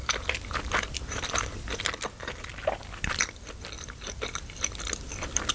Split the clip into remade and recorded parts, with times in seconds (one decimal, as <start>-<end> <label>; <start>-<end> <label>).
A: 0.0-1.8 remade; 1.8-2.5 recorded; 2.5-5.5 remade